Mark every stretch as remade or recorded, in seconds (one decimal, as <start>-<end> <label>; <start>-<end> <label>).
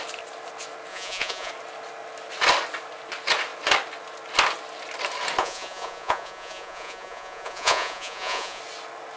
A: 0.0-0.9 recorded; 0.9-1.5 remade; 1.5-5.4 recorded; 5.4-8.6 remade; 8.6-9.2 recorded